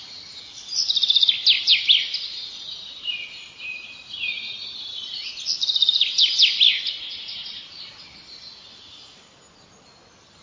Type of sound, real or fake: real